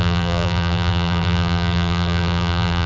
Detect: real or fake fake